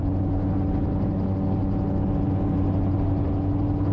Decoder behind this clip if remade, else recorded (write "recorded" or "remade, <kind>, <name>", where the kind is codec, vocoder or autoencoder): recorded